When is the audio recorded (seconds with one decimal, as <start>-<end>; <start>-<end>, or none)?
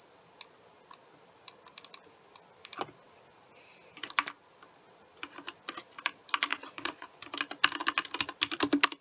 0.0-6.5; 7.2-9.0